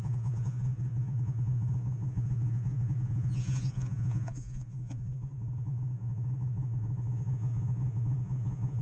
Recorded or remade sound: remade